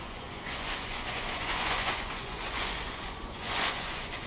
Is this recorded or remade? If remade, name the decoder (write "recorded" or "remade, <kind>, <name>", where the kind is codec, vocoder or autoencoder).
remade, vocoder, Vocos